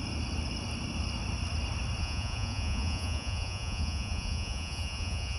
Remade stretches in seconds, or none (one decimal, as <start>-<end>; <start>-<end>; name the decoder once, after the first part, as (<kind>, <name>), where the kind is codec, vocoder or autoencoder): 2.0-5.4 (vocoder, Vocos)